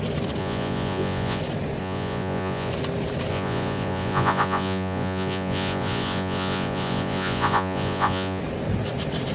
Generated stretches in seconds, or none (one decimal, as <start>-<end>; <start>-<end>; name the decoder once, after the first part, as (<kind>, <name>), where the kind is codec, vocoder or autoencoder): 0.4-1.4 (vocoder, Vocos); 1.8-2.7; 3.3-8.4